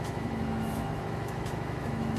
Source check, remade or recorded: remade